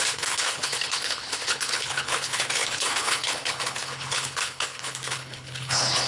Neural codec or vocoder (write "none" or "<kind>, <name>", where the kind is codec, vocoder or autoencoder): codec, HILCodec